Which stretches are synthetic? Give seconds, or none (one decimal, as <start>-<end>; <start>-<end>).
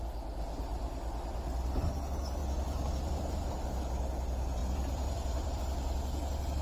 2.4-3.8; 4.6-5.6